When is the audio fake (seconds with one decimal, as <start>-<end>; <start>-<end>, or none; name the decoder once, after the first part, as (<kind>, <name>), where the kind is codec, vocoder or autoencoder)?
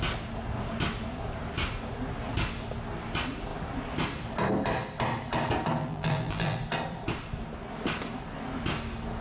5.8-6.6 (vocoder, BigVGAN v2)